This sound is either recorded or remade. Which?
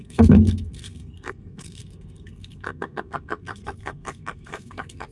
remade